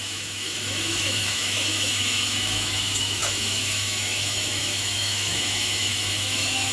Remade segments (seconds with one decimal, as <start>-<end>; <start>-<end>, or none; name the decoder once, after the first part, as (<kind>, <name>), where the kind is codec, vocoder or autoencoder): 0.0-6.7 (autoencoder, DAC-VAE)